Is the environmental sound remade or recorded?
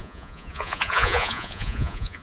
remade